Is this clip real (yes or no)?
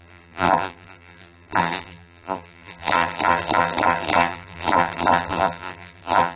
no